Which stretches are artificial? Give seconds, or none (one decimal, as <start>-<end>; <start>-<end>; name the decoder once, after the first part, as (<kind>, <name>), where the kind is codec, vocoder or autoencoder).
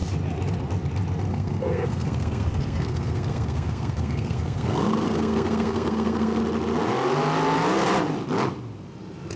1.3-6.4 (codec, SNAC)